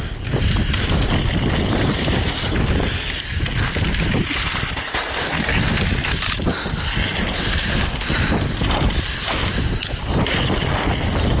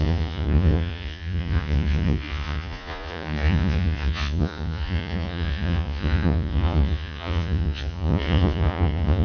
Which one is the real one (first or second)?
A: first